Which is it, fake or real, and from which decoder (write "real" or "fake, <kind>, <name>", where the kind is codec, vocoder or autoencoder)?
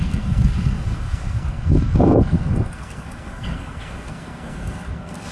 fake, codec, SNAC